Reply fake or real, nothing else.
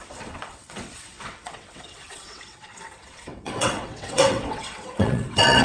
fake